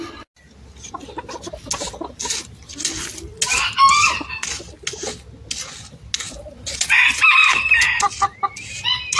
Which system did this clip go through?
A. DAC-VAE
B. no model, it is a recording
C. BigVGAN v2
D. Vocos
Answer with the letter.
B